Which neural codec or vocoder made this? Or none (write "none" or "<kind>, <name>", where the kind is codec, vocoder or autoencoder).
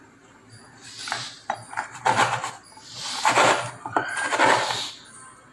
none